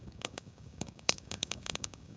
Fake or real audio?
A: fake